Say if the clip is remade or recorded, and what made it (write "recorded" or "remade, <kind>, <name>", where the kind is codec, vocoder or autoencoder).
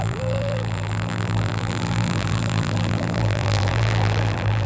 remade, vocoder, BigVGAN v2